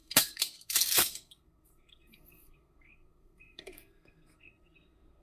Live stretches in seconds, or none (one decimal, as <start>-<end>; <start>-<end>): none